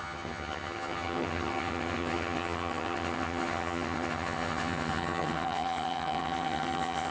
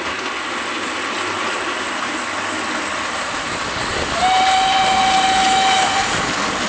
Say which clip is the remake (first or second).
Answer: first